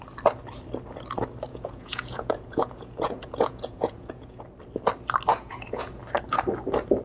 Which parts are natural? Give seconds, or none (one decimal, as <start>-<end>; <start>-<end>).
0.0-1.5; 4.4-5.3; 6.0-7.0